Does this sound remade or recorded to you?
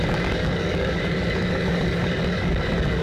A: remade